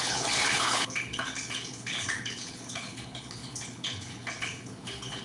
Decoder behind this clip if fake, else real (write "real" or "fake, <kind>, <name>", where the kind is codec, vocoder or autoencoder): fake, codec, HILCodec